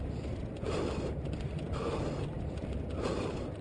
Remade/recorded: recorded